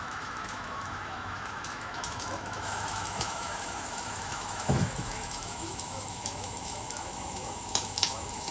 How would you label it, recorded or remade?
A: remade